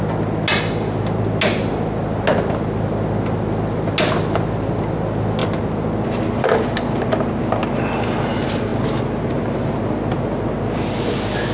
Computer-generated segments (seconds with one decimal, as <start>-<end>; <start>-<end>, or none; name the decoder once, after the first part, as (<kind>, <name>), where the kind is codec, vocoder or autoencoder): none